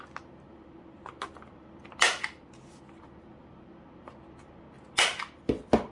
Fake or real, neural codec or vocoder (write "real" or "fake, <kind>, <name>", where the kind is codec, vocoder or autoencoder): real